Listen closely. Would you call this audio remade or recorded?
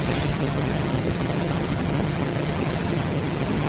remade